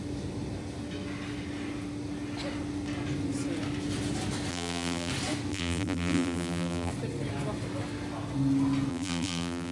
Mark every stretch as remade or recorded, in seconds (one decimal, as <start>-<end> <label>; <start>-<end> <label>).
0.0-4.5 recorded; 4.5-5.1 remade; 5.1-5.5 recorded; 5.5-6.9 remade; 6.9-8.9 recorded; 8.9-9.7 remade